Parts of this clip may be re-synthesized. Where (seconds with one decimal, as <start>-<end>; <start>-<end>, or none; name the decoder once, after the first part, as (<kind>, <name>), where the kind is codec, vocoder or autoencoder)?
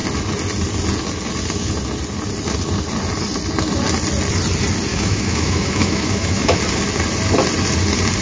4.9-6.6 (autoencoder, DAC-VAE)